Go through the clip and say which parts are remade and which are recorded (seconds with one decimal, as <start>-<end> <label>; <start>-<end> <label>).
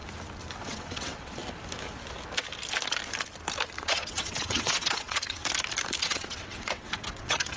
0.0-0.6 recorded; 0.6-1.4 remade; 1.4-3.8 recorded; 3.8-5.4 remade; 5.4-6.0 recorded; 6.0-7.6 remade